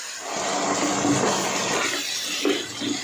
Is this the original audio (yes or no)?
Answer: yes